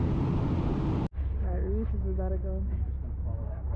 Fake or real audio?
real